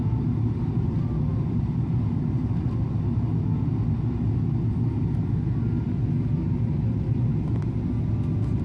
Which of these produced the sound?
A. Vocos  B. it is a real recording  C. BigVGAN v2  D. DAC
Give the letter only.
B